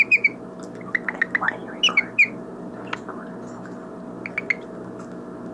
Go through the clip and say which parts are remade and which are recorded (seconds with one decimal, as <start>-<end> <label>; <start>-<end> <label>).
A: 0.0-5.5 recorded